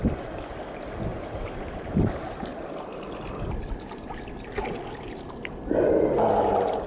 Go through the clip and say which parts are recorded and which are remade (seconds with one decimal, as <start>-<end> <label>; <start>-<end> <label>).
0.0-1.1 recorded; 1.1-2.9 remade; 2.9-6.9 recorded